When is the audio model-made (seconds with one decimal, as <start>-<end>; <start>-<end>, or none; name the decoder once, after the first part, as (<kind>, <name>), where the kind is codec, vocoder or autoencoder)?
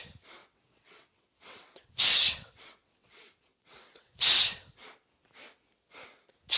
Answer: 0.4-4.4 (vocoder, WaveNeXt)